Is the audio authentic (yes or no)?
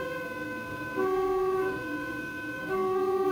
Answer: no